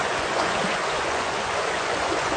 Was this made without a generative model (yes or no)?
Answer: no